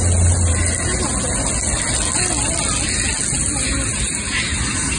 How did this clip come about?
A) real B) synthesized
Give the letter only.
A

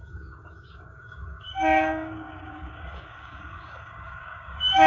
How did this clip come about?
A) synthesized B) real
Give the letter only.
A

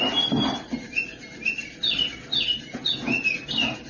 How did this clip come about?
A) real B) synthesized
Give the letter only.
A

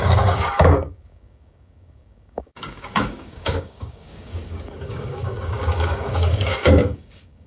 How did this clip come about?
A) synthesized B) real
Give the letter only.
A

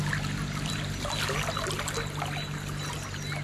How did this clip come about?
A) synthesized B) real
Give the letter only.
B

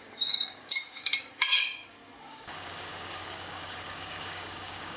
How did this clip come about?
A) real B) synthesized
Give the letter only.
B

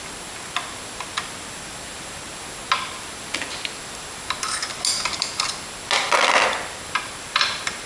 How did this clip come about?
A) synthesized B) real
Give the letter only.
B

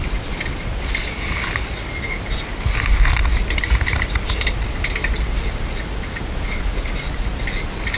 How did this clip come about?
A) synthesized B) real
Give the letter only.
B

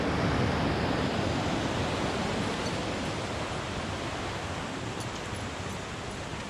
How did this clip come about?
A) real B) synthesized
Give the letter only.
A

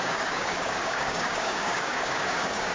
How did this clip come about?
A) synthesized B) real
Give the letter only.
A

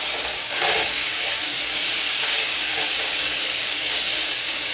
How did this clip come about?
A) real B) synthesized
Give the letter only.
B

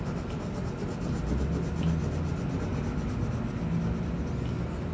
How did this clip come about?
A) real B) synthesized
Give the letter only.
A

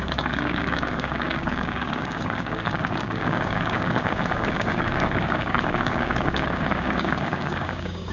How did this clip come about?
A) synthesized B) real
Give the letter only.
A